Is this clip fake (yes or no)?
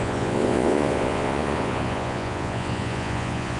yes